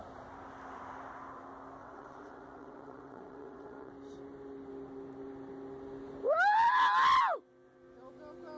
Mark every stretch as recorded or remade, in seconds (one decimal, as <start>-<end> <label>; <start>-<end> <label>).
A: 0.0-1.8 recorded; 1.8-3.9 remade; 3.9-8.6 recorded